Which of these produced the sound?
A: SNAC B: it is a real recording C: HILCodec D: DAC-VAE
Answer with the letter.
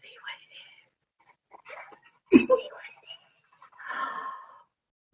B